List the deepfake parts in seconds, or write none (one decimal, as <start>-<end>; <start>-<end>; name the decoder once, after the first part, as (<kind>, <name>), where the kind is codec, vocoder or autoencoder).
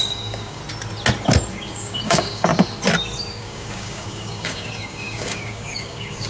0.0-0.6 (codec, DAC); 1.5-2.5; 3.3-6.3